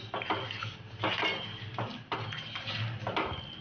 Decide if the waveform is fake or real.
real